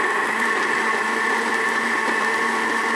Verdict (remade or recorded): recorded